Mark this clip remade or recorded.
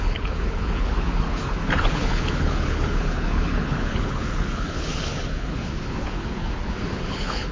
remade